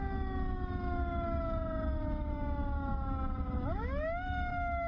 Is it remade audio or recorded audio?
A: remade